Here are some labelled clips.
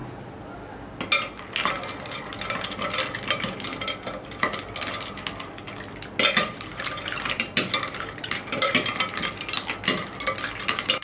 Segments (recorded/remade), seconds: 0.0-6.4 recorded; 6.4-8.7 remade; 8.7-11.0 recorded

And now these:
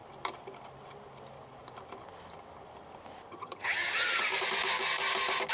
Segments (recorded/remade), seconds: 0.0-3.3 recorded; 3.3-4.3 remade; 4.3-5.5 recorded

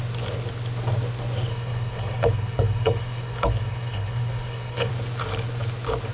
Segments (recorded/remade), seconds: 0.0-1.5 recorded; 1.5-4.9 remade; 4.9-6.1 recorded